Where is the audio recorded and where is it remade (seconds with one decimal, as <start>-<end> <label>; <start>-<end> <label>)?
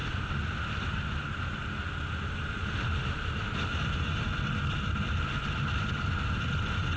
0.0-7.0 recorded